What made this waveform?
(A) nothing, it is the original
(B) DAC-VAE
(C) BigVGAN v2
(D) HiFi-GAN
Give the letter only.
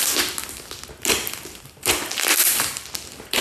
A